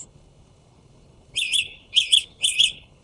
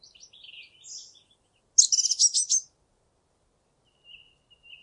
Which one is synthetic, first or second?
first